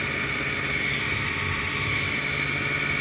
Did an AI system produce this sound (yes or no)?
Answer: no